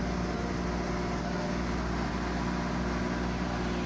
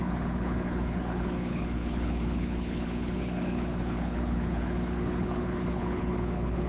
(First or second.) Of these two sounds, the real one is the first